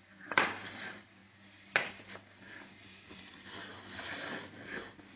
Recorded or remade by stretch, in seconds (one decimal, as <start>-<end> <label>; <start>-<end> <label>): 0.0-1.2 remade; 1.2-1.9 recorded; 1.9-3.7 remade; 3.7-5.2 recorded